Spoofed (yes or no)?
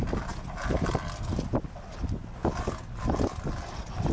yes